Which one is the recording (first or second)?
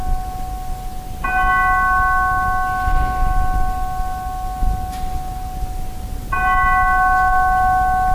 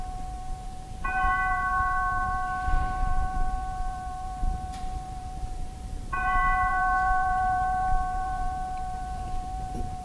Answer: first